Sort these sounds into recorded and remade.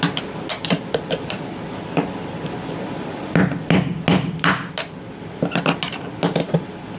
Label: recorded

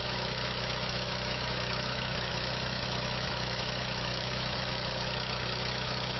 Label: remade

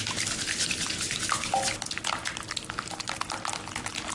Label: recorded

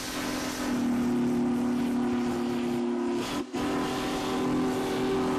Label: recorded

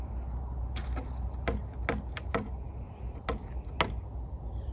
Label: recorded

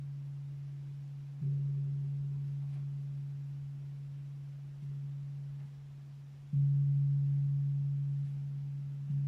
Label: recorded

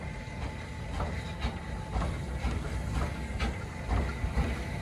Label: recorded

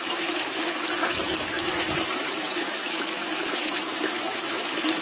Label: remade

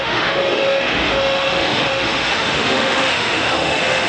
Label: remade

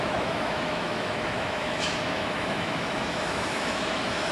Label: remade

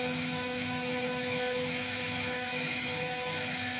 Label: remade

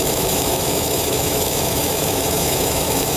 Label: remade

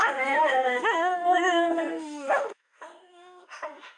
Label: remade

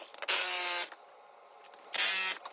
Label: recorded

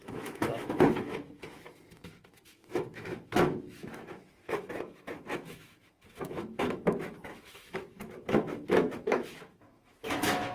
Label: remade